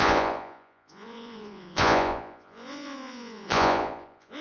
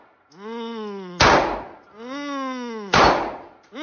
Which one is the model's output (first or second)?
first